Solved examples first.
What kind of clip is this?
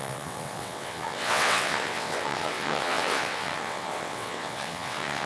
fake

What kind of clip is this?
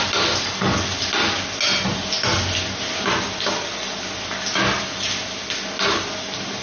real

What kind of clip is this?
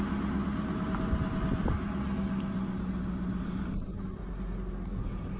real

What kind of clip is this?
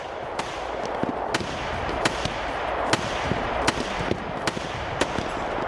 real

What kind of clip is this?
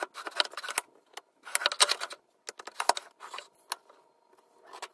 real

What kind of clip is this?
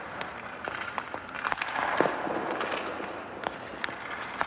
real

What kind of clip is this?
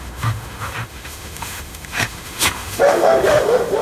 fake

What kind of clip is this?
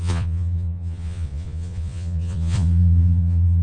fake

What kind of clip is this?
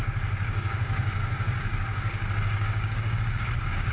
fake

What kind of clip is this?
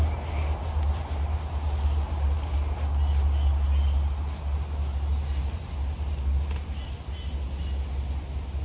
real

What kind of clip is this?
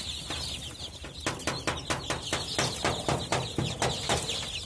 real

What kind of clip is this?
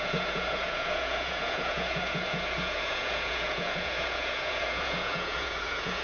fake